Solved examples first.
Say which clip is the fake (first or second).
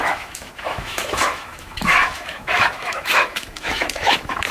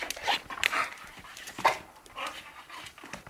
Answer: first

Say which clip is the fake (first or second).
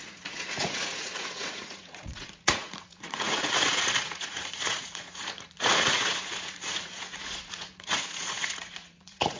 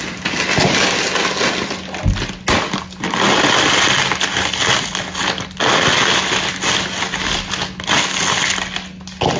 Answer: first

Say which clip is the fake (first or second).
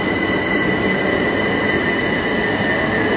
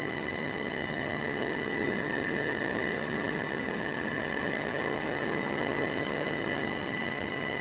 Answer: second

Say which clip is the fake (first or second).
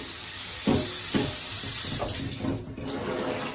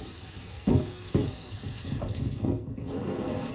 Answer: second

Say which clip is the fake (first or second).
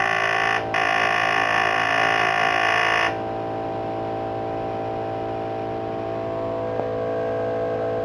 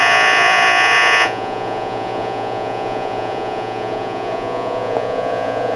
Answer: second